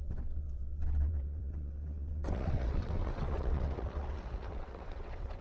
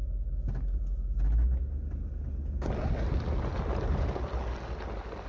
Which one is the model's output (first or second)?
first